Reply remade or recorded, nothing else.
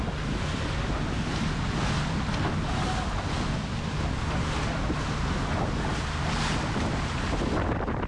recorded